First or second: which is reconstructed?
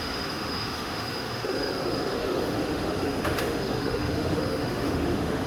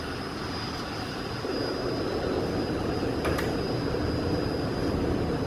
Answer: first